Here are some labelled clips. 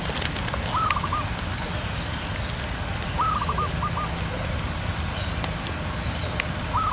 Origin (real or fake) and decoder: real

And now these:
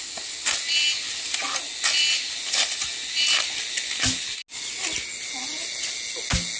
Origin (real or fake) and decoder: real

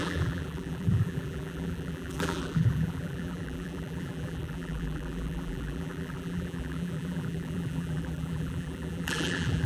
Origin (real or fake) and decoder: fake, vocoder, BigVGAN v2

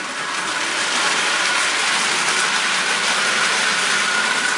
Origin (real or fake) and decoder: real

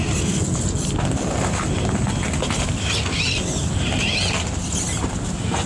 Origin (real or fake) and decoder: real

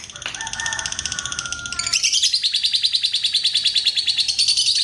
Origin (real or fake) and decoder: real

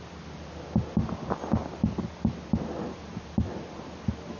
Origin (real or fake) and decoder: real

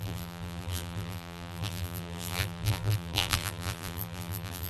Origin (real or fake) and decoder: fake, vocoder, BigVGAN v2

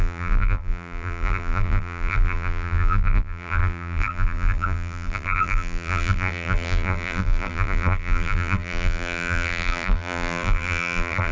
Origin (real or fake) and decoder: fake, vocoder, BigVGAN v2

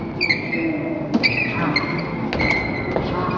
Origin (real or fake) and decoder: real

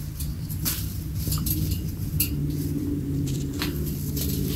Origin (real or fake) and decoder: fake, vocoder, BigVGAN v2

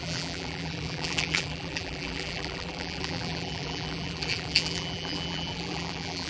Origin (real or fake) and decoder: fake, vocoder, BigVGAN v2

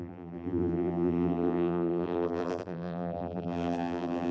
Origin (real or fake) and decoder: fake, vocoder, BigVGAN v2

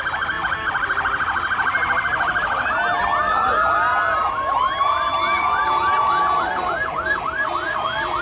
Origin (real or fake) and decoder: fake, vocoder, BigVGAN v2